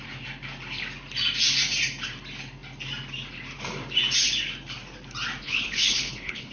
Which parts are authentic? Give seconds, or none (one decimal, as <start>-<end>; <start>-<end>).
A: 0.0-5.4